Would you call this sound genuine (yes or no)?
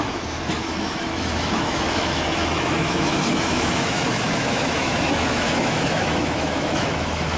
no